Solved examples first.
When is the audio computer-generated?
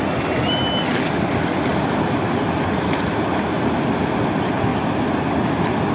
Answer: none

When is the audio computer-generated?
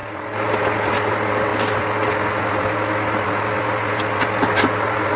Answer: none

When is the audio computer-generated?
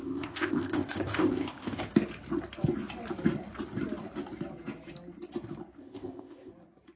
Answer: 0.0-1.8; 5.8-6.5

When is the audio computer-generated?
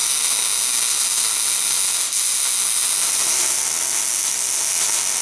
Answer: none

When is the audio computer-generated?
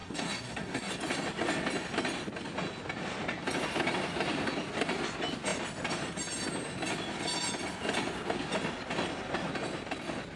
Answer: 0.0-0.9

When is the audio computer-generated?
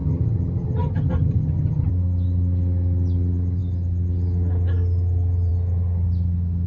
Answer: 0.0-1.9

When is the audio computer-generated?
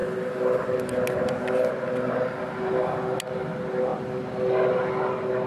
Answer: none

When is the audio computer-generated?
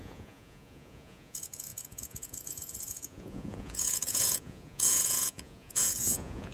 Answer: 0.0-6.5